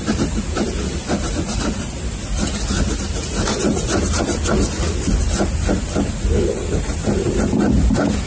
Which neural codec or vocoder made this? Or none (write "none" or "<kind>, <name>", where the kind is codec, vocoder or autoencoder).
none